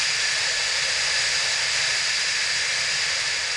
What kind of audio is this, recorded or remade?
recorded